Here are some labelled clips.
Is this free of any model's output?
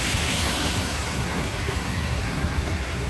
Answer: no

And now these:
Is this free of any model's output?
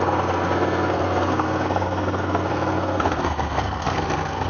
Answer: no